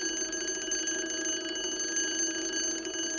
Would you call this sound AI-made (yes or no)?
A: no